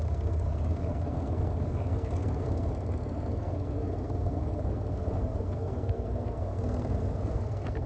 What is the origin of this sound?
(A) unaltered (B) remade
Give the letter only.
B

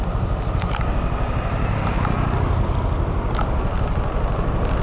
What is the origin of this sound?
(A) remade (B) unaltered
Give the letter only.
B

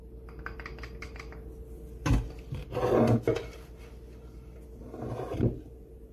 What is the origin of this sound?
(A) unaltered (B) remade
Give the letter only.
A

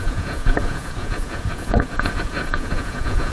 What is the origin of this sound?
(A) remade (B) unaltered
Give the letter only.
A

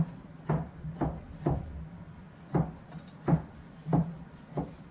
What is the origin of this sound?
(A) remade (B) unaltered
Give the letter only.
B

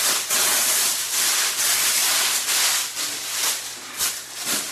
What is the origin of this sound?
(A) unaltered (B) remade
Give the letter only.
B